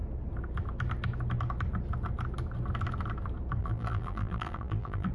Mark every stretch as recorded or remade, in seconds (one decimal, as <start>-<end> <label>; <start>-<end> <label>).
0.0-3.6 recorded; 3.6-5.1 remade